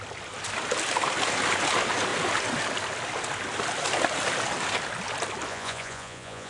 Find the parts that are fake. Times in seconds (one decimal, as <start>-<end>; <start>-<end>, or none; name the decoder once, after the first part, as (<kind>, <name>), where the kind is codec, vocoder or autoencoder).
5.5-6.5 (vocoder, Vocos)